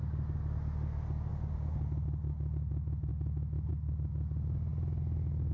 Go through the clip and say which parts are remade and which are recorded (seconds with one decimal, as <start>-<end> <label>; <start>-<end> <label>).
0.0-5.5 recorded